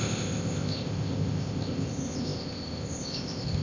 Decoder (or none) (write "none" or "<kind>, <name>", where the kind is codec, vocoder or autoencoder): codec, ZipCodec